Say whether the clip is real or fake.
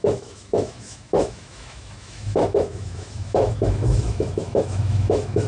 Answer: fake